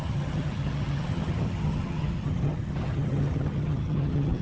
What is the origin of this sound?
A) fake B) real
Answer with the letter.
A